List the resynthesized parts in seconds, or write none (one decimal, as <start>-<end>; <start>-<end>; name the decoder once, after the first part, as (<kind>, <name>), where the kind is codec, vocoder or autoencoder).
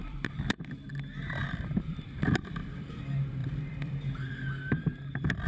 0.0-0.9 (vocoder, BigVGAN v2); 1.4-3.0; 3.4-4.3